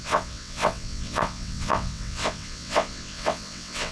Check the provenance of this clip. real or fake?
fake